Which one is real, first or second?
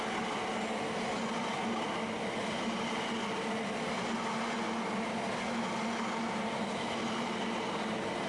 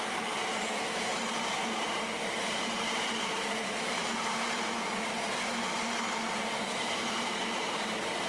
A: first